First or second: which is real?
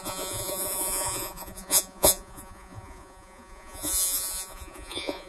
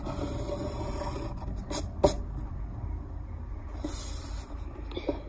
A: second